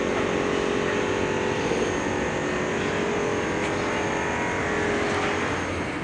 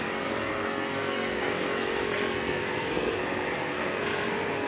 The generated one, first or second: second